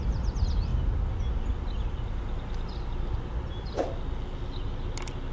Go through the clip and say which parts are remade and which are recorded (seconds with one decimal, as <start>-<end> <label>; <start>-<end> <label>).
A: 0.0-5.3 recorded